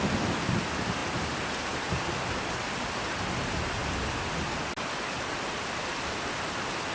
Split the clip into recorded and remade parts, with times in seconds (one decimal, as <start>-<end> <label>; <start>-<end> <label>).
0.0-6.9 recorded